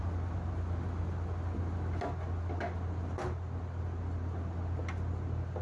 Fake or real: real